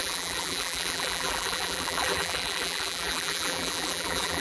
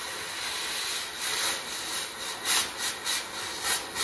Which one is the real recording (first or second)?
second